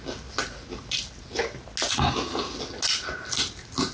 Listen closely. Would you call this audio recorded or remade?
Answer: recorded